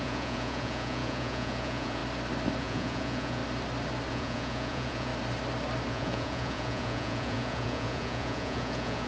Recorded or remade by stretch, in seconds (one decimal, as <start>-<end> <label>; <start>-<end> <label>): 0.0-2.0 remade; 2.0-2.6 recorded; 2.6-3.4 remade; 3.4-4.1 recorded; 4.1-5.1 remade; 5.1-5.9 recorded; 5.9-9.1 remade